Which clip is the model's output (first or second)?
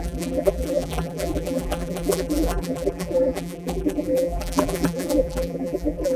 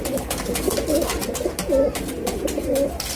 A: first